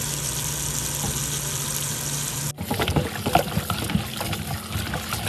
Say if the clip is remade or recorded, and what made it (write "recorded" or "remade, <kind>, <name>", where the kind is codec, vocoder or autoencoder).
recorded